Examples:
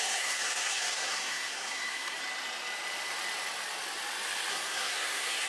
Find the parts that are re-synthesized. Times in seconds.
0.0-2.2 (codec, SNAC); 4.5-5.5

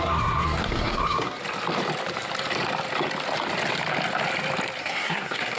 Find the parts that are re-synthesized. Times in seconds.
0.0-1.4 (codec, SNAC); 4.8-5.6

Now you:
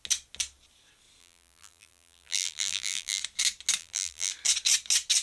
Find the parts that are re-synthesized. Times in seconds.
1.2-3.2 (vocoder, BigVGAN v2); 3.8-4.3

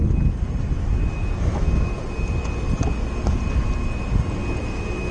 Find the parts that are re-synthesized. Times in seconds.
0.8-2.0 (autoencoder, DAC-VAE); 4.6-5.1

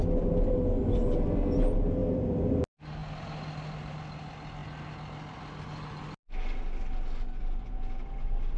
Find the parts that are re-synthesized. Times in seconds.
2.0-2.6 (vocoder, BigVGAN v2)

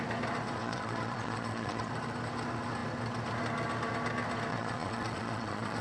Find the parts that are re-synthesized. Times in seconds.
0.6-1.9 (vocoder, Vocos); 4.5-5.8